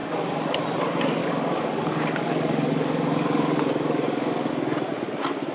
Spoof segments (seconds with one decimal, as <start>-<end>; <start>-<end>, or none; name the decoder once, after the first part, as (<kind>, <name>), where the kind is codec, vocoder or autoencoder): 0.0-0.6 (codec, DAC); 1.2-4.5